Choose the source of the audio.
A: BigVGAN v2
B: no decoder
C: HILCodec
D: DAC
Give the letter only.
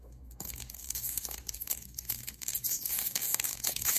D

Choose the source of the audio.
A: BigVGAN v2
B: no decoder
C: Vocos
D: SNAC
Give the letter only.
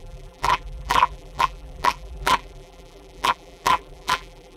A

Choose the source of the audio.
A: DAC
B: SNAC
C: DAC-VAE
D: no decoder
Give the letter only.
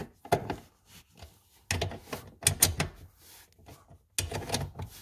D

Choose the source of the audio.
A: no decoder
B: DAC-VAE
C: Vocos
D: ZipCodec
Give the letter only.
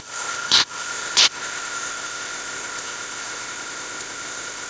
D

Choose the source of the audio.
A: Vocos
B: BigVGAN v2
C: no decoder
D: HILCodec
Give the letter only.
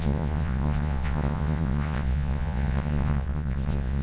A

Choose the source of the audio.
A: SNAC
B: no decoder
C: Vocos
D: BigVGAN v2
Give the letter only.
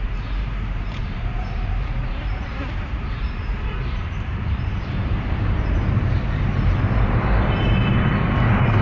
D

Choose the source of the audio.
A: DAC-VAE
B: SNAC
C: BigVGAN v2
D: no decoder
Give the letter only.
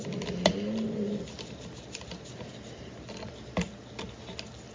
D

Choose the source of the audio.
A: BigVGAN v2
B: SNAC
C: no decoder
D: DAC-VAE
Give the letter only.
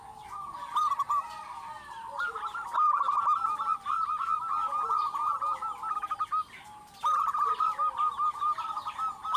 C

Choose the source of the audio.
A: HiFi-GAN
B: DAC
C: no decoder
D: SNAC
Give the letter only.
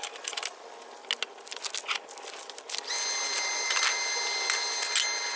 C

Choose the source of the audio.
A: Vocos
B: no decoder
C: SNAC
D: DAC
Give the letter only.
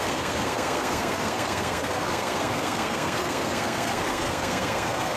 C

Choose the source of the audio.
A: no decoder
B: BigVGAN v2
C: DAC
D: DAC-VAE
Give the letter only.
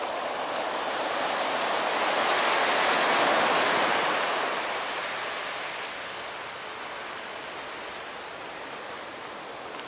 A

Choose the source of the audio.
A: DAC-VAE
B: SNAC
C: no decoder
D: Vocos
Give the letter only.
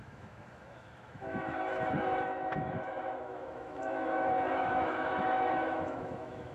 A